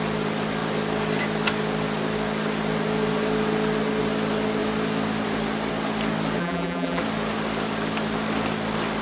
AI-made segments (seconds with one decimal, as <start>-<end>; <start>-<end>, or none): 6.4-7.0